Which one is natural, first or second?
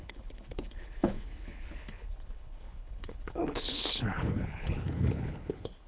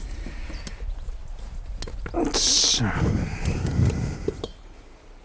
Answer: second